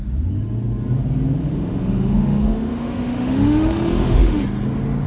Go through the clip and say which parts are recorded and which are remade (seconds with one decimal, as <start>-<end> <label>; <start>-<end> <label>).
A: 0.0-1.4 recorded; 1.4-4.4 remade; 4.4-5.1 recorded